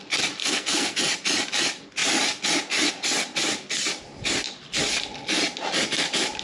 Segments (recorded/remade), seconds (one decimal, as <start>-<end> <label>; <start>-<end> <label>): 0.0-0.4 recorded; 0.4-1.0 remade; 1.0-6.4 recorded